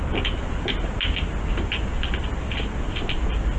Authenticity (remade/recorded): recorded